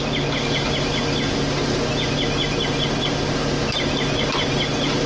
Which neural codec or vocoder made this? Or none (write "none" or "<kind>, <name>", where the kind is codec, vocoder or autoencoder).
none